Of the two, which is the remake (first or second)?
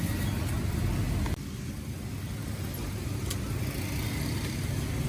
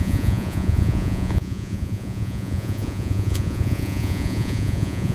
second